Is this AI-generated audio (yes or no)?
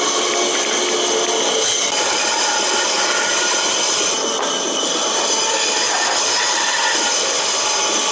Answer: no